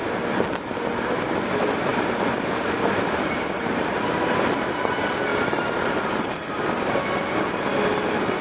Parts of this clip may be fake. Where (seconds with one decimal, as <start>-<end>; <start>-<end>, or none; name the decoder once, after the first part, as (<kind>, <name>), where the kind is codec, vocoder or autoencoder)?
1.9-4.8 (vocoder, BigVGAN v2); 5.3-6.9